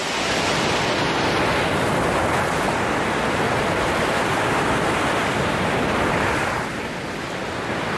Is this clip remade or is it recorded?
recorded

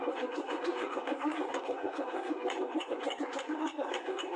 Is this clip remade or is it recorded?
remade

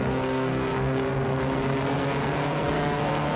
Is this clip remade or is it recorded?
remade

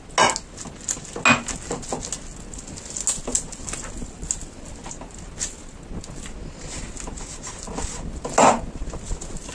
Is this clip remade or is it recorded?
recorded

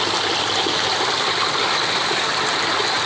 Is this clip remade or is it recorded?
recorded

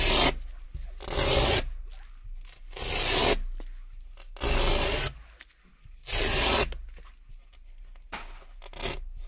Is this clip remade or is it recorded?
recorded